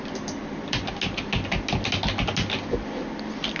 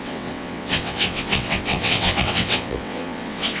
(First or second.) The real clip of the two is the first